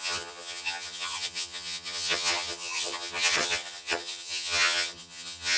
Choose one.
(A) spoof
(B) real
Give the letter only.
A